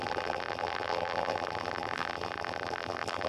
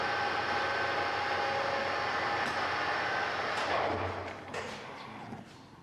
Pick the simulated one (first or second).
first